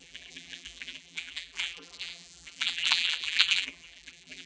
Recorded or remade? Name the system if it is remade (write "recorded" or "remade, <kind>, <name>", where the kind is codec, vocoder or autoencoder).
remade, vocoder, BigVGAN v2